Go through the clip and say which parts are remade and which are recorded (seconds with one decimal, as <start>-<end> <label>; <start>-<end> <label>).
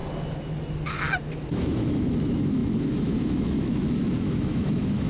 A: 0.0-1.3 recorded; 1.3-5.1 remade